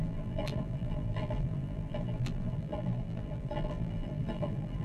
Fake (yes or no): yes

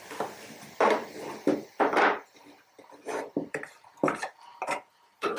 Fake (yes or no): yes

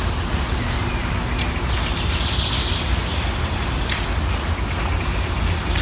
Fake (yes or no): no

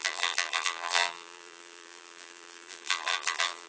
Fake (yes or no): yes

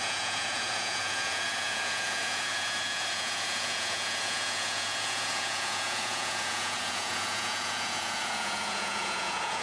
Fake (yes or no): yes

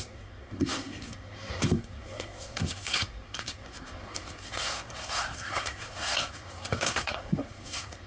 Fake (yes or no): yes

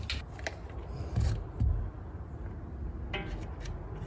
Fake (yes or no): no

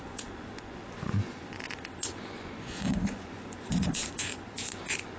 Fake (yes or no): yes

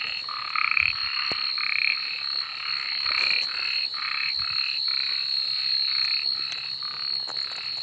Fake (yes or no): no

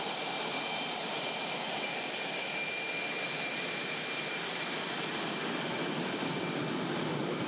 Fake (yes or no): yes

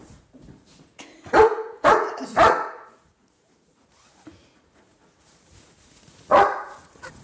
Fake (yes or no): yes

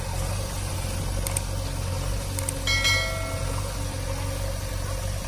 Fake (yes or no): no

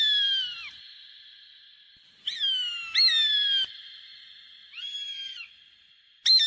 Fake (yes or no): no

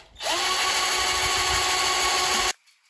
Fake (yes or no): no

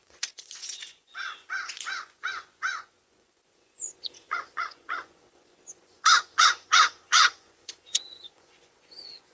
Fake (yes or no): yes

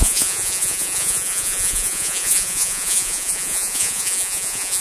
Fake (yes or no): yes